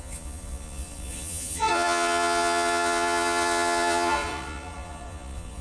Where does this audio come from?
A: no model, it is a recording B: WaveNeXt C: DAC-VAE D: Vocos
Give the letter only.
D